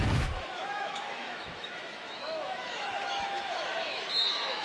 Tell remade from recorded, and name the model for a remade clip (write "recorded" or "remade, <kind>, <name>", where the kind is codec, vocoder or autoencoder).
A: remade, autoencoder, DAC-VAE